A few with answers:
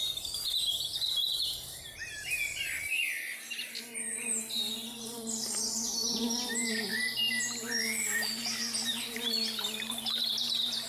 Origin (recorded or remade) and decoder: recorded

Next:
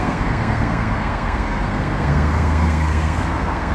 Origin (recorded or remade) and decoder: remade, codec, SNAC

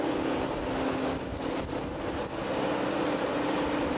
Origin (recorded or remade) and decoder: recorded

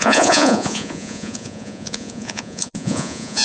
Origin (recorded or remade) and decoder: remade, vocoder, Vocos